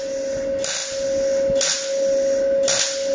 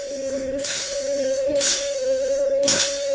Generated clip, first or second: second